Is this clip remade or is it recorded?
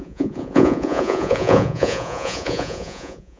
remade